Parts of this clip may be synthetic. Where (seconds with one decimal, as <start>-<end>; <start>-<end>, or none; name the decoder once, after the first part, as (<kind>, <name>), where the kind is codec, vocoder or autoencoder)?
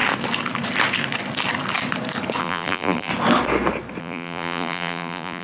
2.4-3.1 (vocoder, BigVGAN v2); 4.0-5.4